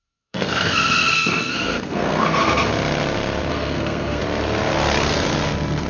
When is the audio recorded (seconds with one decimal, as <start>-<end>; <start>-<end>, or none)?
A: 2.7-3.5; 4.2-5.9